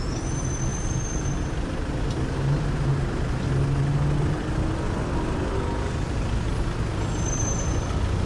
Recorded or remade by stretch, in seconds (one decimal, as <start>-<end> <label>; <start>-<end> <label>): 0.0-8.3 recorded

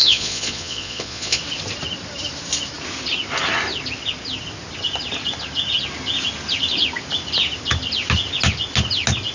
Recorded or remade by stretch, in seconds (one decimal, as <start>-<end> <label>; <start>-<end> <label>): 0.0-1.4 remade; 1.4-9.3 recorded

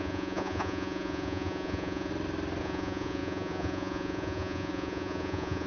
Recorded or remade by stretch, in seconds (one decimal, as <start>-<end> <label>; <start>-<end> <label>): 0.0-2.1 remade; 2.1-2.6 recorded; 2.6-5.7 remade

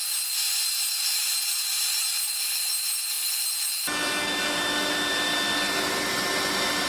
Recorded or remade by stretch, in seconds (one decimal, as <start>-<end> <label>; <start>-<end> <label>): 0.0-6.9 recorded

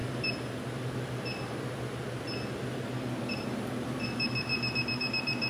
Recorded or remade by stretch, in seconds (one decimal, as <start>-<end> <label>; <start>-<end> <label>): 0.0-3.3 recorded; 3.3-5.5 remade